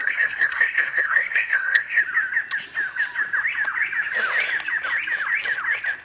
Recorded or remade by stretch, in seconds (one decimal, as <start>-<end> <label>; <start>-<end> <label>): 0.0-2.0 remade; 2.0-6.0 recorded